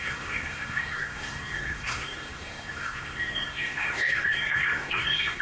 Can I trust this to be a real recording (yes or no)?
no